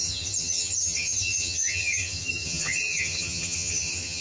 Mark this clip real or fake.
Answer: fake